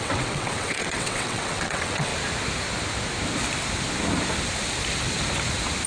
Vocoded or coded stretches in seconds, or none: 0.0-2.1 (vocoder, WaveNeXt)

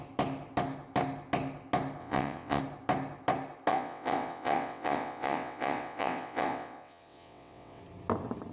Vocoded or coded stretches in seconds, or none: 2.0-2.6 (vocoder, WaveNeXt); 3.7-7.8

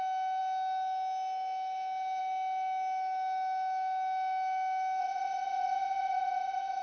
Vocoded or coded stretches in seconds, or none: 5.0-6.8 (vocoder, WaveNeXt)

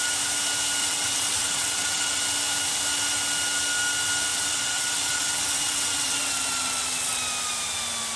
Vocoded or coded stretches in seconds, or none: 0.8-2.2 (vocoder, WaveNeXt); 4.3-7.2

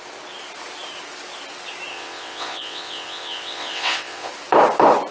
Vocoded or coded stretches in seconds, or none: 1.9-4.3 (vocoder, WaveNeXt)